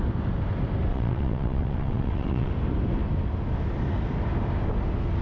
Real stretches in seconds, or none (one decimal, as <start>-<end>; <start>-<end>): 0.0-0.9; 2.5-5.2